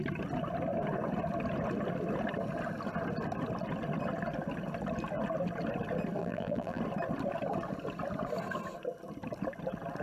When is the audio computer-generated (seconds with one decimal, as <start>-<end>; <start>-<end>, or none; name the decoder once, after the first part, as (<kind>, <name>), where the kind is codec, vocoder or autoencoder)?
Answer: 6.2-6.8 (vocoder, BigVGAN v2)